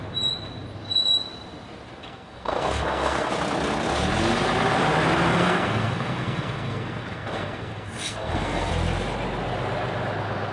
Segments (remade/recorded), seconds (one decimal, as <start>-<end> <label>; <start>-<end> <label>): 0.0-2.0 recorded; 2.0-3.3 remade; 3.3-5.3 recorded; 5.3-8.7 remade; 8.7-10.5 recorded